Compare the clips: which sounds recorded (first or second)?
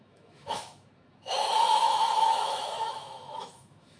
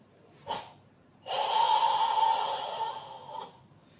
second